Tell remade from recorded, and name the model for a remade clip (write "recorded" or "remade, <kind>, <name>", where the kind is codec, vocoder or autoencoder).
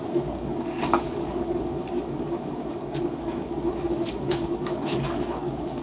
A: remade, codec, DAC